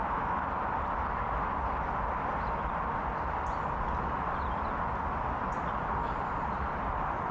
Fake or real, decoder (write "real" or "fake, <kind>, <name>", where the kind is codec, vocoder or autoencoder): real